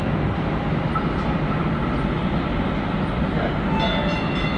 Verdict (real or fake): real